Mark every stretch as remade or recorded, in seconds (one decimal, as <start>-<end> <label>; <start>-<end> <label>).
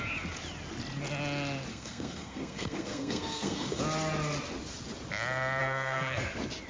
0.0-1.7 recorded; 1.7-3.8 remade; 3.8-5.6 recorded; 5.6-6.2 remade; 6.2-6.7 recorded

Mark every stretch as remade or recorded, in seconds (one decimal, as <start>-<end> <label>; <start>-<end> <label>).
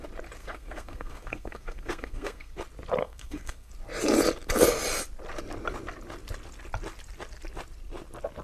0.0-0.4 recorded; 0.4-2.5 remade; 2.5-3.0 recorded; 3.0-3.7 remade; 3.7-8.4 recorded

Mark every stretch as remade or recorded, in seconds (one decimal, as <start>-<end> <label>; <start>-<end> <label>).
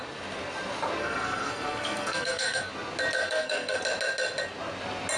0.0-1.0 recorded; 1.0-2.7 remade; 2.7-3.2 recorded; 3.2-3.8 remade; 3.8-5.2 recorded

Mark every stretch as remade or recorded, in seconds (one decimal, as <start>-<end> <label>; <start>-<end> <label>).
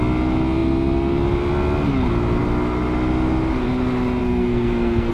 0.0-4.2 recorded; 4.2-5.1 remade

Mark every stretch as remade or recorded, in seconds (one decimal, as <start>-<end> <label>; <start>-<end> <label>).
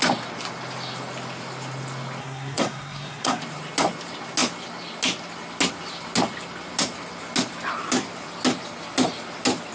0.0-2.2 recorded; 2.2-3.4 remade; 3.4-9.7 recorded